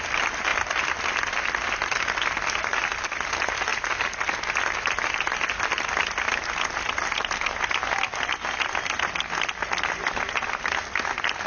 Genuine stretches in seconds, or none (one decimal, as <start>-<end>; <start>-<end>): 0.0-11.5